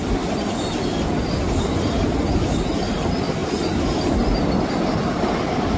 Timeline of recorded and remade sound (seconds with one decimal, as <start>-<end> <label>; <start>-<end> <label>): 0.0-5.8 recorded